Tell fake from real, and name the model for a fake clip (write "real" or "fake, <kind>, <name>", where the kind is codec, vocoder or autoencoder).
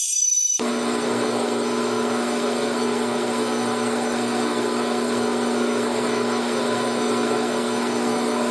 fake, codec, SNAC